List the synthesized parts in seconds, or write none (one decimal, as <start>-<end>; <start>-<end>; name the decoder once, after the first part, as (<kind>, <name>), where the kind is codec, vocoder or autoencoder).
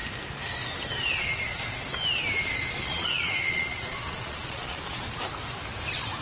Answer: 2.8-5.0 (vocoder, Vocos)